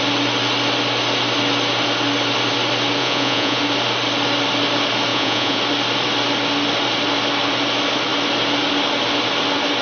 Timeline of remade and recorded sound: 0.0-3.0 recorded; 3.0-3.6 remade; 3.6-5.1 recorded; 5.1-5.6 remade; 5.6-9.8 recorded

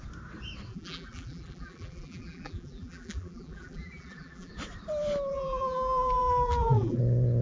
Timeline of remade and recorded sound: 0.0-0.7 recorded; 0.7-4.5 remade; 4.5-5.3 recorded; 5.3-7.0 remade; 7.0-7.4 recorded

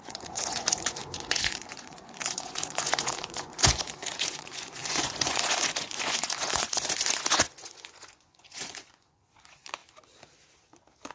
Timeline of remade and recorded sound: 0.0-9.8 remade; 9.8-11.1 recorded